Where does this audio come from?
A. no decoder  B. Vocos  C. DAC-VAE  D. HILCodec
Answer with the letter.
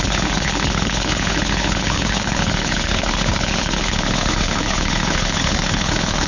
D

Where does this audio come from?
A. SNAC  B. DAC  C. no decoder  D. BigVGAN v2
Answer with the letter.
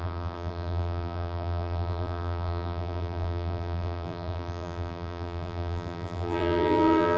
D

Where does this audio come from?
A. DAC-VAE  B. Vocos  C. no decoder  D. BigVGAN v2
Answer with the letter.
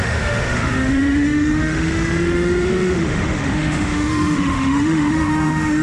A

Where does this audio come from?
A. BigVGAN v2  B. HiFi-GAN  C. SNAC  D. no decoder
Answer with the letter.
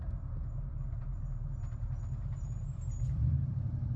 A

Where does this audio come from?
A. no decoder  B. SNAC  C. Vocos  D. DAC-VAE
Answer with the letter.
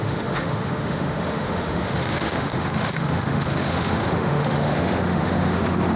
D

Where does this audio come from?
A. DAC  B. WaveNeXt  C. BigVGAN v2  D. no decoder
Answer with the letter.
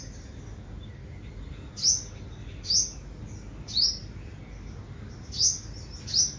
D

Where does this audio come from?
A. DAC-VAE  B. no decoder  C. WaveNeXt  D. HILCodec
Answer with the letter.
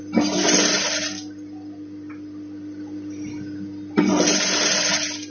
B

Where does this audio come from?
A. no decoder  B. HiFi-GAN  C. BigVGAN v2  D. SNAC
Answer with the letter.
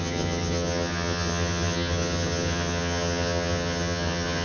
B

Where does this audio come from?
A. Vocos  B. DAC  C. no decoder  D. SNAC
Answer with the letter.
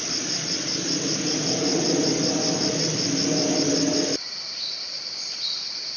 C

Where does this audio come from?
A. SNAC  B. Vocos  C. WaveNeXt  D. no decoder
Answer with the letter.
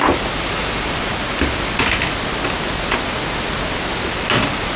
D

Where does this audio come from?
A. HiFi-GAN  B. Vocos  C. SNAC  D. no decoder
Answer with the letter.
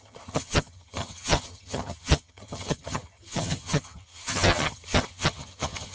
A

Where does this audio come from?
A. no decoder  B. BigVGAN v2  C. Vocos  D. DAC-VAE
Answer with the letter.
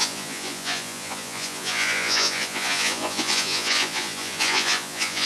C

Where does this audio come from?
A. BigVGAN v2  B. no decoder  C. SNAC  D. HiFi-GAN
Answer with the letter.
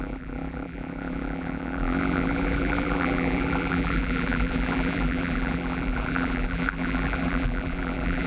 A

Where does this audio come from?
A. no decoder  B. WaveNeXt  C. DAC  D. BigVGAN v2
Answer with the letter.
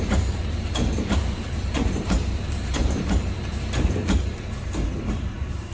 D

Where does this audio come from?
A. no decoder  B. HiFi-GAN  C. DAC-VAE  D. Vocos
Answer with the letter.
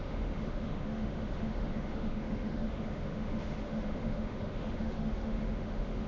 C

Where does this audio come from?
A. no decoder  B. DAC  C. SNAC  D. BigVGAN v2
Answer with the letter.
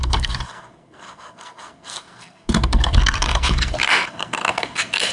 C